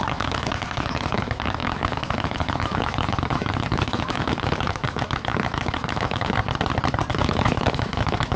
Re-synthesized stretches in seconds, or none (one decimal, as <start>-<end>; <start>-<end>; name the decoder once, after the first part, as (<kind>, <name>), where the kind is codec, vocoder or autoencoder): 0.0-6.4 (autoencoder, DAC-VAE); 7.1-8.4

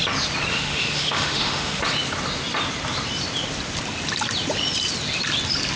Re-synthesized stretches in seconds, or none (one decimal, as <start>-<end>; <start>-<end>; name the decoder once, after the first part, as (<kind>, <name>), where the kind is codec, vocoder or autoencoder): 0.5-1.8 (autoencoder, DAC-VAE)

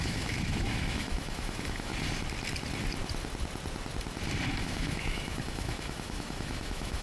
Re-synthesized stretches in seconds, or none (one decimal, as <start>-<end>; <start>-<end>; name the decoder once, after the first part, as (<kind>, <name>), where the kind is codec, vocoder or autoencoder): 0.0-1.9 (autoencoder, DAC-VAE); 4.6-7.0

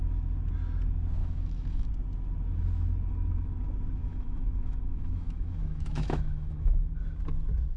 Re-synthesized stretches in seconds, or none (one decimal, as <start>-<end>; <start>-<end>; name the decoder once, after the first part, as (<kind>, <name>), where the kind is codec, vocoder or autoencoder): 1.2-1.9 (autoencoder, DAC-VAE); 4.0-6.9